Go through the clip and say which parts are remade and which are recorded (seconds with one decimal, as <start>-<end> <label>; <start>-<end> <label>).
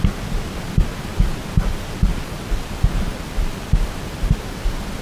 0.0-5.0 recorded